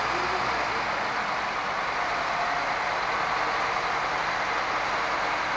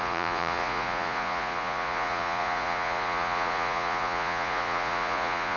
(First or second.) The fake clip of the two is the second